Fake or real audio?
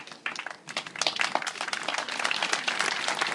real